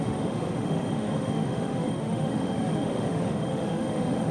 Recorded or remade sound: remade